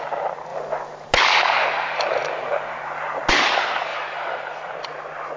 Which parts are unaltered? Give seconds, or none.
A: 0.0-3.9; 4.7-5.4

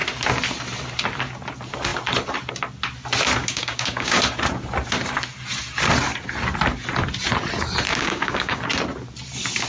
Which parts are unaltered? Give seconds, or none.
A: 0.0-3.4; 4.2-7.9; 8.6-9.7